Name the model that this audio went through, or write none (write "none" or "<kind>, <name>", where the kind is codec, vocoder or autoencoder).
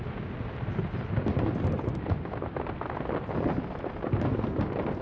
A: none